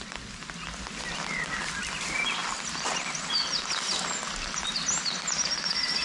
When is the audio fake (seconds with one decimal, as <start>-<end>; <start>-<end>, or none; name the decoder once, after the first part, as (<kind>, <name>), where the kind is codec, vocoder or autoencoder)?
2.4-5.0 (vocoder, BigVGAN v2)